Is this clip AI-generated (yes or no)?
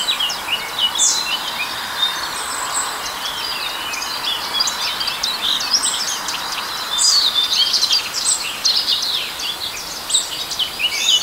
no